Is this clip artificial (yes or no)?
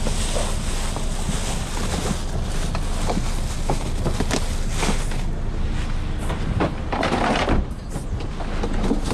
no